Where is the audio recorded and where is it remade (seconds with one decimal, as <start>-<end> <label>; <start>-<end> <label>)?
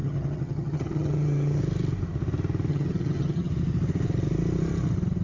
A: 0.0-1.6 remade; 1.6-2.7 recorded; 2.7-3.5 remade; 3.5-5.2 recorded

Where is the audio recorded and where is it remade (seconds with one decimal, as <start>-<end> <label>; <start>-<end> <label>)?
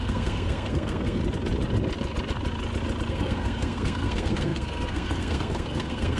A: 0.0-1.2 remade; 1.2-3.1 recorded; 3.1-6.2 remade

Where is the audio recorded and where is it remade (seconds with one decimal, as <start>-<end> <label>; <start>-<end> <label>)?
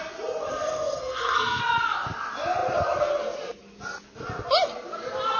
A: 0.0-0.5 recorded; 0.5-1.6 remade; 1.6-5.4 recorded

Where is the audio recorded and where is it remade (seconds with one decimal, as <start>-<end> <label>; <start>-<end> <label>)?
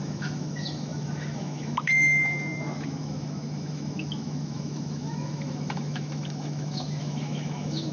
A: 0.0-7.9 remade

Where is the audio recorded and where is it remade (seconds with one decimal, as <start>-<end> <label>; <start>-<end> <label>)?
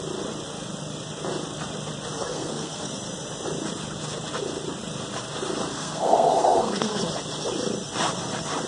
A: 0.0-2.3 recorded; 2.3-2.9 remade; 2.9-5.7 recorded; 5.7-7.0 remade; 7.0-8.7 recorded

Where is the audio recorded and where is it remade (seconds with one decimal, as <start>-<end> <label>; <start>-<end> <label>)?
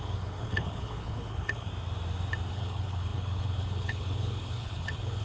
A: 0.0-1.7 remade; 1.7-2.5 recorded; 2.5-5.2 remade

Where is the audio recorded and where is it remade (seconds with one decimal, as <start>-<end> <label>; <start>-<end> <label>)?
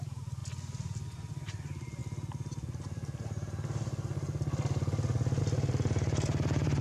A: 0.0-0.4 remade; 0.4-1.3 recorded; 1.3-2.0 remade; 2.0-5.4 recorded; 5.4-6.8 remade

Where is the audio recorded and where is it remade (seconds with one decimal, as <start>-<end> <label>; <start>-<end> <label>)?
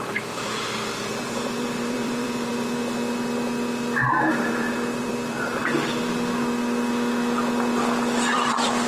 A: 0.0-2.5 remade; 2.5-4.4 recorded; 4.4-5.6 remade; 5.6-8.3 recorded; 8.3-8.9 remade